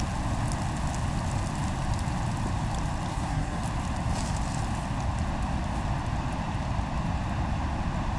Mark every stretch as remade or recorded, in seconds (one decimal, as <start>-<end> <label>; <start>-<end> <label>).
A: 0.0-3.1 recorded; 3.1-3.6 remade; 3.6-8.2 recorded